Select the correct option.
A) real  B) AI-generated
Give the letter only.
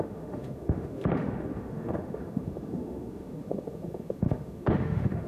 B